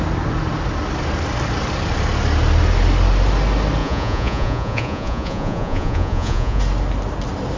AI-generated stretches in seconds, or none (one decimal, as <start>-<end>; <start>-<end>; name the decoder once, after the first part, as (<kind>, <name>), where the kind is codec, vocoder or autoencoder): 3.8-6.6 (vocoder, Vocos)